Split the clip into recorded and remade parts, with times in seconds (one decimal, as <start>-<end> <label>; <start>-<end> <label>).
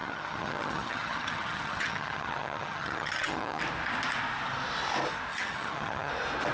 0.0-3.6 remade; 3.6-5.3 recorded; 5.3-6.1 remade; 6.1-6.5 recorded